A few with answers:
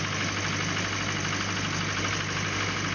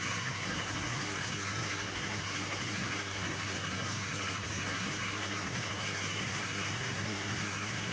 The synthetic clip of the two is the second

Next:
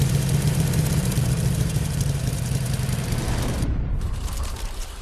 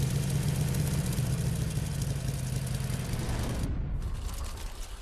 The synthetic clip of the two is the first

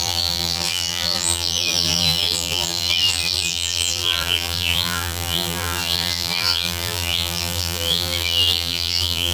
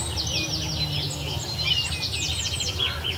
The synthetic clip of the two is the first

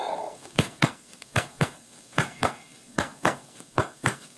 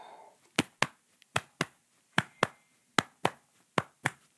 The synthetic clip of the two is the first